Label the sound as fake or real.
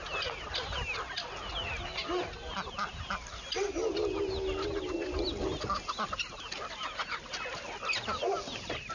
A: real